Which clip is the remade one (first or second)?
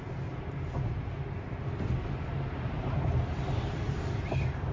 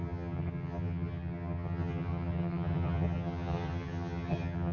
second